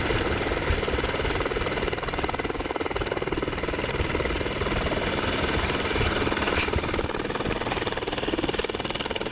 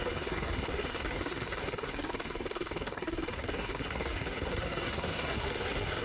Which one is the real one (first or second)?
first